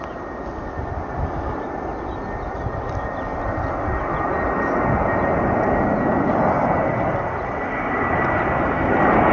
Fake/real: real